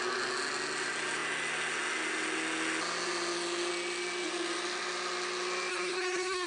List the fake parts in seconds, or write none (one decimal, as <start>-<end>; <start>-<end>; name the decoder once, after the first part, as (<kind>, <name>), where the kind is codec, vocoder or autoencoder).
5.7-6.5 (codec, SNAC)

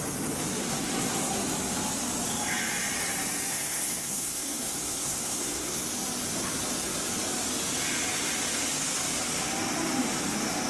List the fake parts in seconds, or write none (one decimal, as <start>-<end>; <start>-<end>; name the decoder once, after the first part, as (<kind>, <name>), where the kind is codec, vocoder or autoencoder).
0.6-1.3 (codec, SNAC); 3.5-5.8